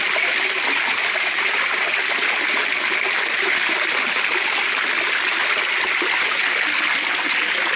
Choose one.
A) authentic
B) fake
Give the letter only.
A